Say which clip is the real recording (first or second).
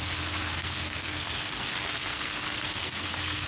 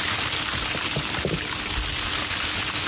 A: second